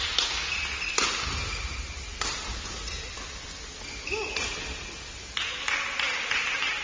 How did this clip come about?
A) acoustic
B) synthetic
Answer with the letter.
A